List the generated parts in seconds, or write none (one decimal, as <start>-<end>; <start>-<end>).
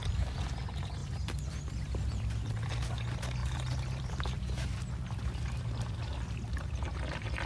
1.0-2.7; 3.4-4.4